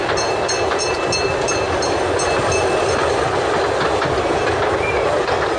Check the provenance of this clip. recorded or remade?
recorded